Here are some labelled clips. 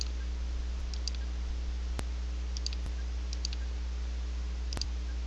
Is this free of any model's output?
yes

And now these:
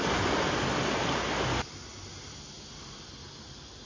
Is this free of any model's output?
yes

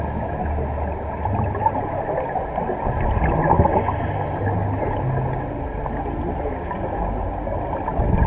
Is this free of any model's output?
yes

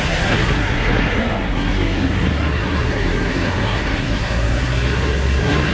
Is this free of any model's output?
no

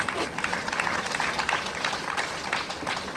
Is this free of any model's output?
yes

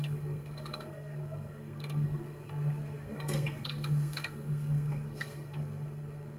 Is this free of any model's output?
no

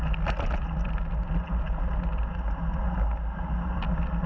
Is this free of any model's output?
yes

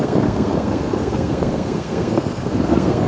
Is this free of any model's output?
no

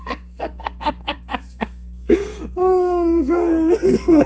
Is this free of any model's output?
no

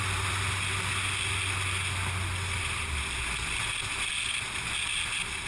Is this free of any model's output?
yes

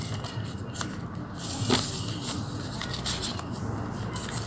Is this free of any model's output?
yes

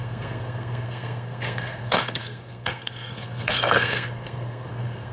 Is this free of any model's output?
no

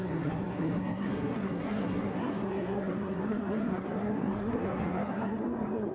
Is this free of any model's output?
no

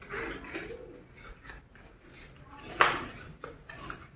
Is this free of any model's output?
yes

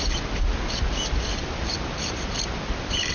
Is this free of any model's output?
yes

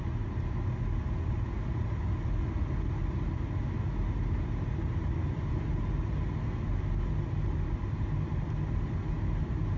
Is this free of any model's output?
yes